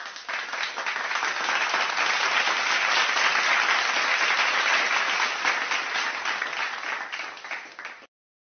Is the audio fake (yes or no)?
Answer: no